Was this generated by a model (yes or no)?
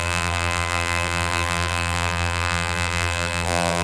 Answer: yes